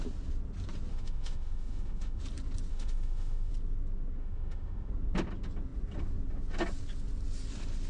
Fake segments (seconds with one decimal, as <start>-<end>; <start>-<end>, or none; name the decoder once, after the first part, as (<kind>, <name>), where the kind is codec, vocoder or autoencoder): 0.9-2.2 (autoencoder, DAC-VAE); 2.7-3.5; 4.2-4.9